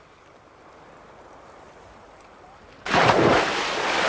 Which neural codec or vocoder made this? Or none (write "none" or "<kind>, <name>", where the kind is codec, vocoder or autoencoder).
none